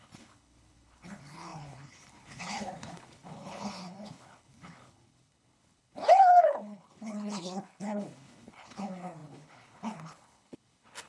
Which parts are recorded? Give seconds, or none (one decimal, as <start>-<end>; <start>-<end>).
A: none

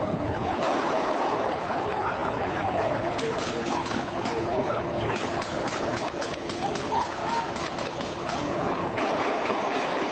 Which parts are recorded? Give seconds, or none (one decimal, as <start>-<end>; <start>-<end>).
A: 7.2-7.8